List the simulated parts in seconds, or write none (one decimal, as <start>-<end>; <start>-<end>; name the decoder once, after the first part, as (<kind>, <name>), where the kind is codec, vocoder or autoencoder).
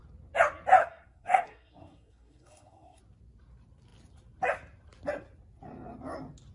0.8-3.0 (codec, SNAC)